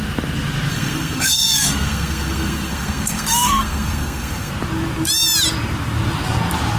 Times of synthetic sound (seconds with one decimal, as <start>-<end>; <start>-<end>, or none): 0.7-4.5

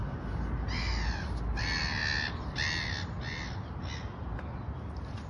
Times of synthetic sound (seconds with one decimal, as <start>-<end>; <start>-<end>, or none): none

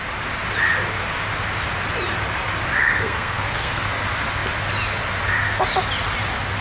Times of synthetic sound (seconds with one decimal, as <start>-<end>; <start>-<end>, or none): 2.8-3.9

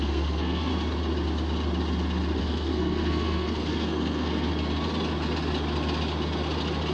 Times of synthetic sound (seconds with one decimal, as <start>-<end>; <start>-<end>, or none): 0.0-0.7; 2.4-4.5

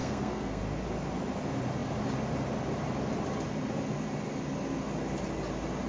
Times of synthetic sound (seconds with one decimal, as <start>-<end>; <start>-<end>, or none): 0.0-0.6

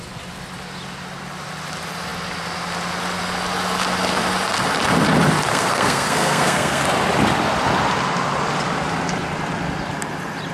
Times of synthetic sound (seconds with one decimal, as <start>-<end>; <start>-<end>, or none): 5.5-6.8

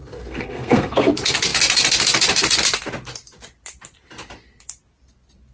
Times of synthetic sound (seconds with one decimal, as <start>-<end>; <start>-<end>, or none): 0.0-1.1